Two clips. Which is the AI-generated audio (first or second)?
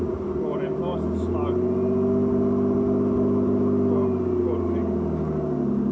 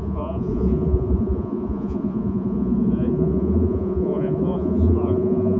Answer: second